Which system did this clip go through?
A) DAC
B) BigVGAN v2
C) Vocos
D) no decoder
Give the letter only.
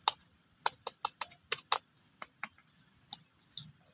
D